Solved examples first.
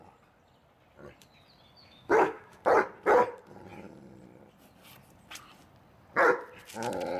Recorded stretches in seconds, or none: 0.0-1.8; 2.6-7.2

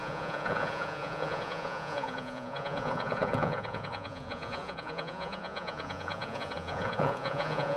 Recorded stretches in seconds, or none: none

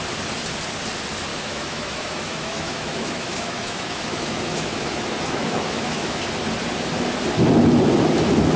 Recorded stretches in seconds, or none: 0.0-1.3; 6.2-8.6

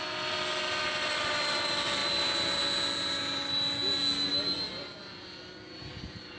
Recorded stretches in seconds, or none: 0.0-6.4

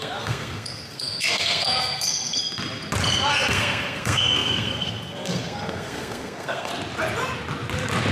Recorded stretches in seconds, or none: 2.4-3.3; 6.7-8.1

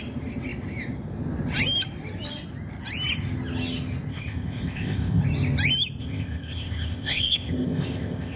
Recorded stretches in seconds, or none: 0.0-4.1; 5.2-6.0